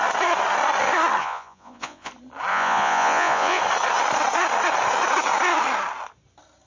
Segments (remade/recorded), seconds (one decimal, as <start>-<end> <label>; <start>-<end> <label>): 0.0-1.2 recorded; 1.2-2.1 remade; 2.1-2.5 recorded; 2.5-3.6 remade; 3.6-6.7 recorded